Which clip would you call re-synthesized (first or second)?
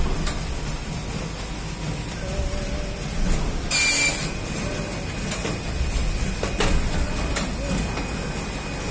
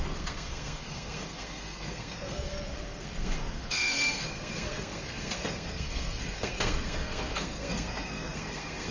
second